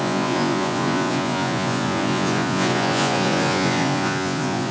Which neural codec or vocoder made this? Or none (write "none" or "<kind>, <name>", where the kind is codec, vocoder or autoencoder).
vocoder, Vocos